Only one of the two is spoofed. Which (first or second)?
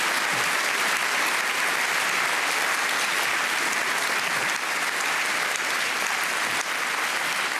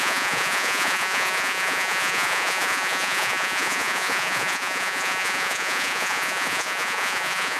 second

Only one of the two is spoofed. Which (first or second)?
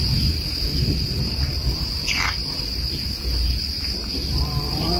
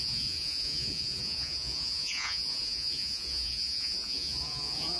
second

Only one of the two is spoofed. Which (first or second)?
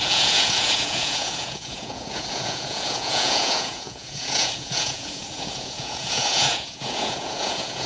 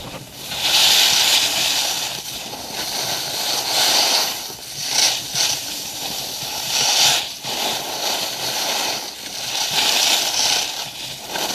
first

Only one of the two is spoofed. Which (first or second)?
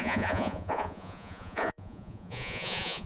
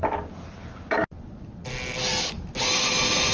first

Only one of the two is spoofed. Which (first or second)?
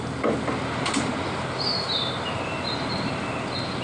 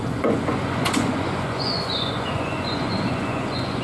second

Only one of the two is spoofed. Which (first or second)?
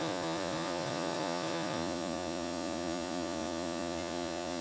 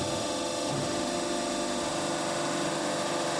first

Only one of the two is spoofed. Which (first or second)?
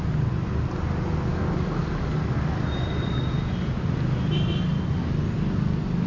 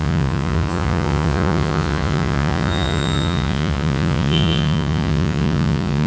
second